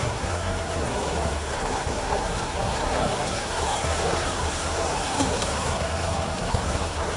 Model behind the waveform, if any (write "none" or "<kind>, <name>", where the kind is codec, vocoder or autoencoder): codec, SNAC